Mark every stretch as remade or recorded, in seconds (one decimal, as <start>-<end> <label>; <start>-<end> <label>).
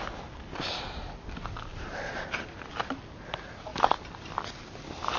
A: 0.0-1.7 recorded; 1.7-2.7 remade; 2.7-5.2 recorded